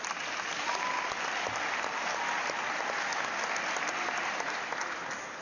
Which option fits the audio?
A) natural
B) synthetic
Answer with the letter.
A